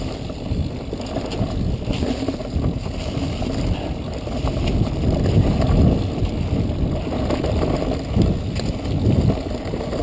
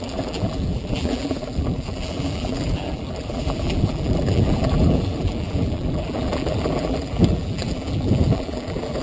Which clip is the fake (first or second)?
second